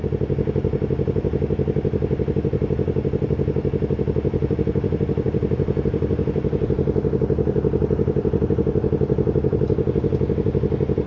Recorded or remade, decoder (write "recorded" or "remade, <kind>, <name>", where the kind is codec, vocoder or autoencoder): recorded